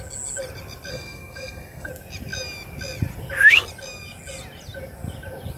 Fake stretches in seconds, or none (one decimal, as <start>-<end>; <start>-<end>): 0.9-1.9